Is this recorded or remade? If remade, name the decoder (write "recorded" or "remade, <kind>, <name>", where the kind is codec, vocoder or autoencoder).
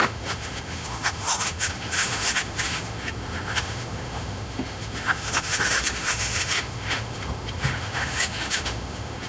remade, autoencoder, DAC-VAE